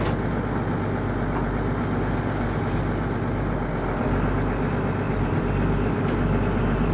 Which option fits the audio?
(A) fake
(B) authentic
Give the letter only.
B